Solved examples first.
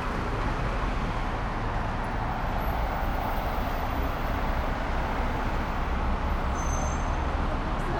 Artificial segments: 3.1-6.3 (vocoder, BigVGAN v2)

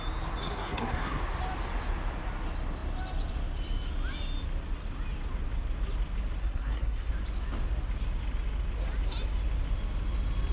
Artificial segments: 0.4-1.2 (codec, SNAC); 6.4-7.1

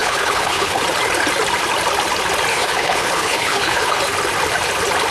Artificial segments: 0.0-0.8 (codec, HILCodec); 2.5-4.0

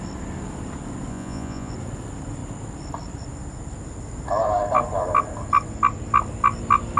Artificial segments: 1.1-1.7 (vocoder, Vocos)